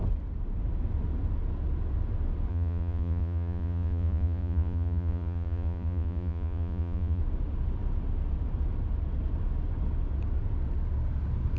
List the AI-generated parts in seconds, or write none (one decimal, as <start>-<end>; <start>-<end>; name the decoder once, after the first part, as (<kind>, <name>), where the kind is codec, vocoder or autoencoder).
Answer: 2.5-7.2 (vocoder, Vocos)